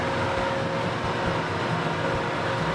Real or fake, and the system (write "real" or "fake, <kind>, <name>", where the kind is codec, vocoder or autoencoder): real